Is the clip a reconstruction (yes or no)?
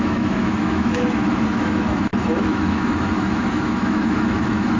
yes